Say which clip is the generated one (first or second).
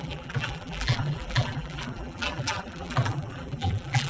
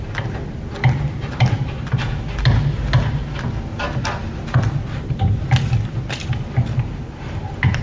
first